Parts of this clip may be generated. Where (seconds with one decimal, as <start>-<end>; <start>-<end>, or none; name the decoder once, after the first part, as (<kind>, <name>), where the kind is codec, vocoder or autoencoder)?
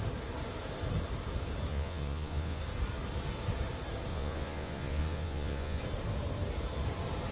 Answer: 1.7-2.6 (vocoder, Vocos); 4.1-5.8